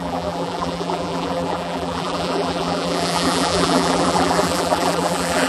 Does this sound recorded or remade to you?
remade